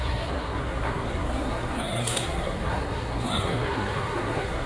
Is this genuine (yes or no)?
no